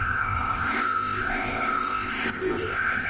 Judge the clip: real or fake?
fake